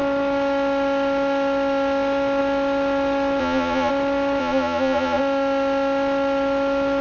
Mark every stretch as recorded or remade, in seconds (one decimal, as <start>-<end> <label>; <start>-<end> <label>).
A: 0.0-3.4 recorded; 3.4-3.9 remade; 3.9-4.4 recorded; 4.4-5.2 remade; 5.2-7.0 recorded

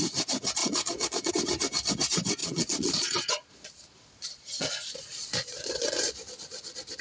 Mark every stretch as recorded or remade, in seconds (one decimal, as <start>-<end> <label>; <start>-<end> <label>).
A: 0.0-0.6 recorded; 0.6-1.3 remade; 1.3-2.4 recorded; 2.4-6.1 remade; 6.1-7.0 recorded

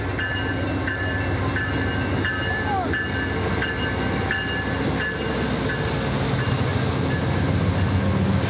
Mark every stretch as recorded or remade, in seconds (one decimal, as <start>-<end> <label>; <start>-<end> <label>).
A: 0.0-8.5 recorded